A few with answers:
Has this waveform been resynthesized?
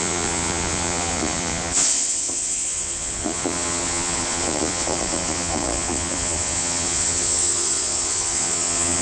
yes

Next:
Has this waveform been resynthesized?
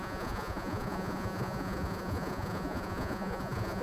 yes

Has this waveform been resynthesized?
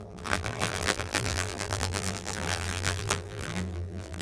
yes